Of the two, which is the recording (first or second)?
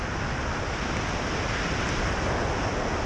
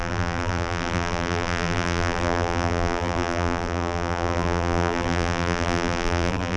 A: first